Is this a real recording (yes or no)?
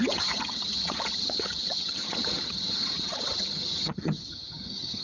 no